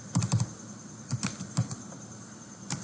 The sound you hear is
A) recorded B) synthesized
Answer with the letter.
A